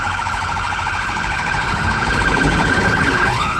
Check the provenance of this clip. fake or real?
fake